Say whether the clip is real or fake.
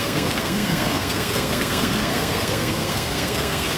fake